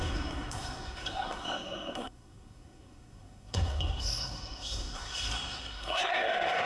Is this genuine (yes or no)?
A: no